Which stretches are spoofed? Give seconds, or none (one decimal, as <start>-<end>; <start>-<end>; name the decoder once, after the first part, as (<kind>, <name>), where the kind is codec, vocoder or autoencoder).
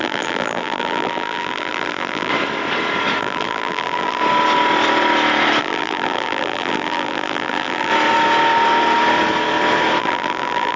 0.0-2.3 (vocoder, BigVGAN v2); 3.2-4.2; 5.6-7.9; 10.0-10.8